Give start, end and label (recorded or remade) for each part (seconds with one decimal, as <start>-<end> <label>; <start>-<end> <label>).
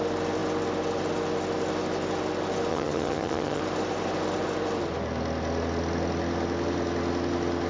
0.0-2.7 recorded; 2.7-3.6 remade; 3.6-7.7 recorded